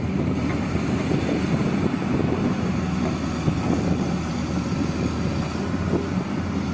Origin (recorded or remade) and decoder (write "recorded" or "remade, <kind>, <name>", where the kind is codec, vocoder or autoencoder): recorded